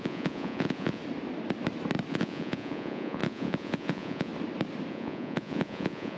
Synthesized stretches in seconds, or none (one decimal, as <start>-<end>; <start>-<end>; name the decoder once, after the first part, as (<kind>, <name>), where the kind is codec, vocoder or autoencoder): 0.0-1.0 (vocoder, Vocos); 2.1-4.3; 4.9-6.2